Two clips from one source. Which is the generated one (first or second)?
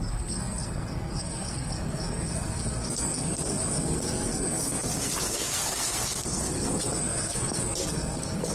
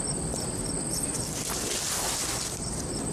first